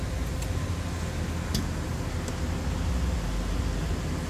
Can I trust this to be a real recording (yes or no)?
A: yes